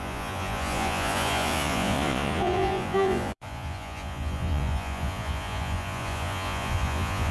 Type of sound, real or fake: fake